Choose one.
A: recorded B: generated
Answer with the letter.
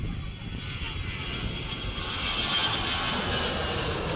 B